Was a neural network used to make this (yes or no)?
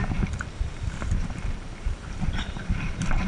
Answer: yes